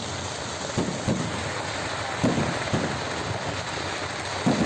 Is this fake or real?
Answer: real